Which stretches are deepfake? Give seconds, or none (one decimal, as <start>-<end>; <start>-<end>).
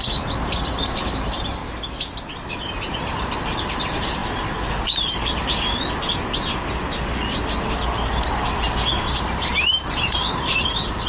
0.0-1.6; 2.5-4.2; 9.2-11.1